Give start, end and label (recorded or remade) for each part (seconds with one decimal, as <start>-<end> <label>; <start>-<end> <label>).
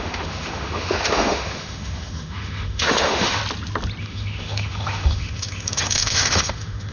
0.0-3.4 remade; 3.4-4.0 recorded; 4.0-6.9 remade